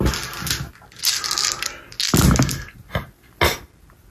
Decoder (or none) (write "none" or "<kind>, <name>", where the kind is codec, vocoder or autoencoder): none